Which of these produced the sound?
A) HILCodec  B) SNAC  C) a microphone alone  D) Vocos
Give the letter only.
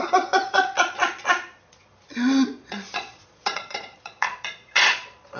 D